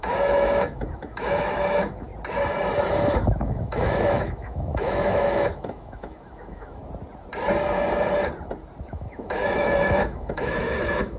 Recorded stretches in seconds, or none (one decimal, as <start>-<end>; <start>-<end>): 2.1-2.9; 6.8-8.8